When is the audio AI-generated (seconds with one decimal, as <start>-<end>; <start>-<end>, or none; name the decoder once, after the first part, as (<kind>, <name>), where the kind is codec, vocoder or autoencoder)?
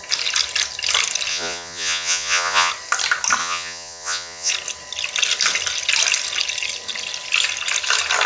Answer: 1.3-2.7 (vocoder, Vocos); 3.4-4.5